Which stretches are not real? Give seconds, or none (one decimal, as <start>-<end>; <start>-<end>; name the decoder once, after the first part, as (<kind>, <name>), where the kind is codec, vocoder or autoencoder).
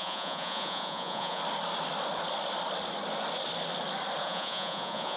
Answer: 0.0-1.4 (vocoder, Vocos); 4.2-5.2